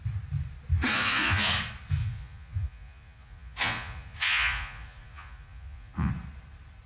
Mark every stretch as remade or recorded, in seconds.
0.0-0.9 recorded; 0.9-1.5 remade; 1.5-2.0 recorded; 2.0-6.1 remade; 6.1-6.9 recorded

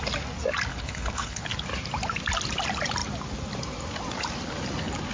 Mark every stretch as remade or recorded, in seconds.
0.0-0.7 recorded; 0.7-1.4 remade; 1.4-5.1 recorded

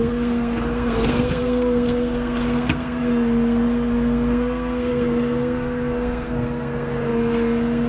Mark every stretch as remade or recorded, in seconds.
0.0-7.9 remade

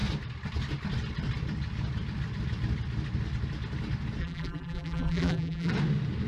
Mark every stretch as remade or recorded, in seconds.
0.0-4.2 recorded; 4.2-5.7 remade; 5.7-6.3 recorded

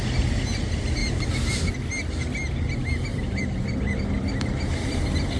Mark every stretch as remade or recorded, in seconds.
0.0-1.0 recorded; 1.0-1.7 remade; 1.7-3.1 recorded; 3.1-4.0 remade; 4.0-5.4 recorded